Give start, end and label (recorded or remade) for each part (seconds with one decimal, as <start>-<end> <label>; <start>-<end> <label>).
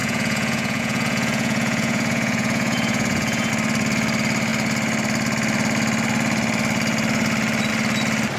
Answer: 0.0-3.5 remade; 3.5-8.4 recorded